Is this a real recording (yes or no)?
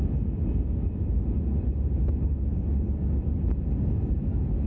yes